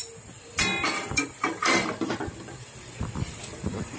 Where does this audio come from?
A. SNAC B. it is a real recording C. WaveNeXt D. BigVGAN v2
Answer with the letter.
D